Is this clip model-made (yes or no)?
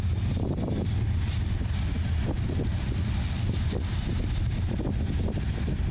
no